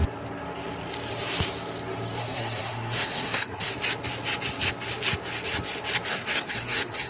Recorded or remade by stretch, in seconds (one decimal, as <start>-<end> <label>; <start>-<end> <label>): 0.0-2.2 recorded; 2.2-3.7 remade; 3.7-6.1 recorded; 6.1-7.1 remade